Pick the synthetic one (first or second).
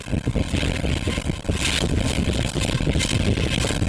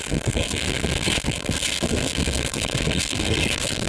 second